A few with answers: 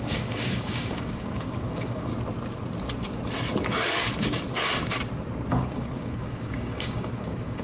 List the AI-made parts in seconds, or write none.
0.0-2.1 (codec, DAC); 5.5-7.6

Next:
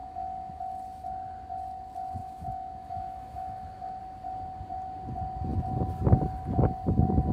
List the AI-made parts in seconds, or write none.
0.0-0.6 (autoencoder, DAC-VAE); 2.2-4.0

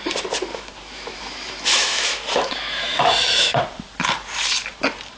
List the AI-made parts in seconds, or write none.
0.5-3.6 (autoencoder, DAC-VAE)

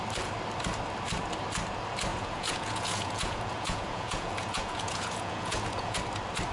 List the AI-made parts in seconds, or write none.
2.1-6.0 (vocoder, Vocos)

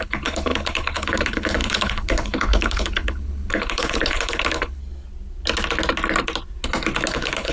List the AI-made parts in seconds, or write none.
0.0-4.8 (codec, HILCodec); 7.1-7.5